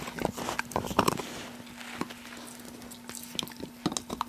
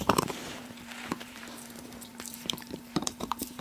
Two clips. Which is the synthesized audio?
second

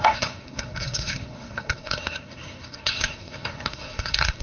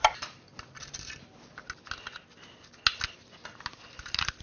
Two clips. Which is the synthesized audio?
first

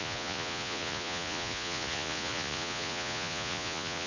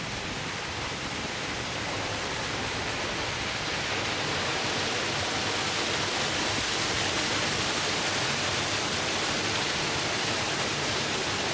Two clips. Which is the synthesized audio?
first